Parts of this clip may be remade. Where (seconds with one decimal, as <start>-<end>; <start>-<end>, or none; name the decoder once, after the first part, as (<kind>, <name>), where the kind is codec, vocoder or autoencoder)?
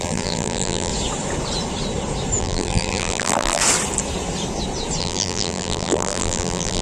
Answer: 0.0-0.9 (vocoder, BigVGAN v2); 2.4-3.6; 5.0-6.8